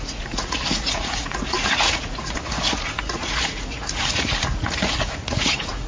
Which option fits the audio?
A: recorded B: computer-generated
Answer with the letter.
B